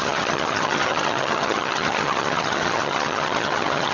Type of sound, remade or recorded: remade